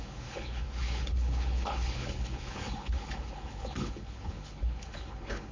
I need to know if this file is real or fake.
fake